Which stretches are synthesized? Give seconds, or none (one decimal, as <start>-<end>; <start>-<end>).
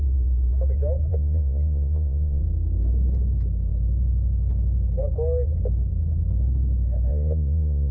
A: 1.1-2.4; 7.1-7.9